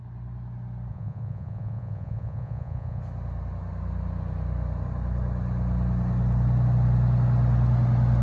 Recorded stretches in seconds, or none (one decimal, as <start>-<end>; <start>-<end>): 0.0-0.9; 3.0-8.2